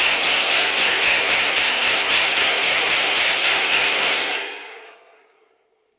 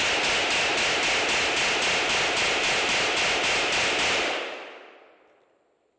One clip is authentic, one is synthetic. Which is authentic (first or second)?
second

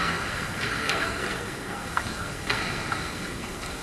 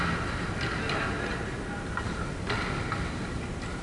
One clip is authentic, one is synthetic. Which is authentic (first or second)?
second